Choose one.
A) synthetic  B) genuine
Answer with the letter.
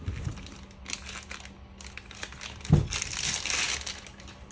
B